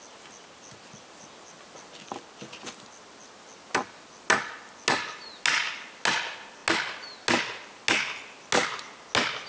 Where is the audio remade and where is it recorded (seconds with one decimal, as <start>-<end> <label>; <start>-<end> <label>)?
0.0-9.5 recorded